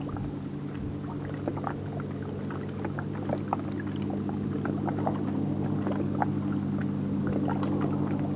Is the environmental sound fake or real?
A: real